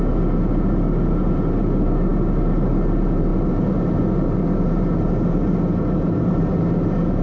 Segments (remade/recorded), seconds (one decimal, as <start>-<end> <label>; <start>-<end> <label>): 0.0-7.2 recorded

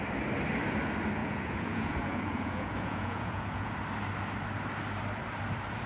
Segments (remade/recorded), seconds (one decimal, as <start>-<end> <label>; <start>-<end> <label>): 0.0-1.2 recorded; 1.2-3.7 remade; 3.7-5.9 recorded

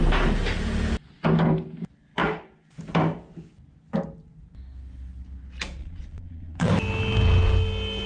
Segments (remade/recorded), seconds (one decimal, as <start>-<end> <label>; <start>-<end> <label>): 0.0-5.8 recorded; 5.8-6.7 remade; 6.7-8.1 recorded

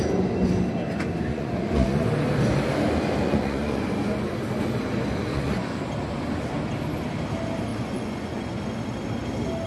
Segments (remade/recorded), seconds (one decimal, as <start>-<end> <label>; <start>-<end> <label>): 0.0-1.3 recorded; 1.3-2.1 remade; 2.1-3.2 recorded; 3.2-3.9 remade; 3.9-5.3 recorded; 5.3-5.8 remade; 5.8-7.7 recorded; 7.7-8.6 remade; 8.6-9.7 recorded

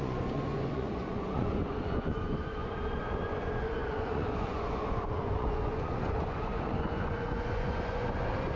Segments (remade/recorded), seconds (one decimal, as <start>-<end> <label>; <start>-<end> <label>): 0.0-8.6 remade